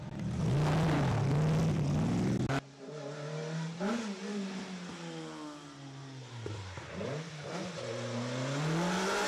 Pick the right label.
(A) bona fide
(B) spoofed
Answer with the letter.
A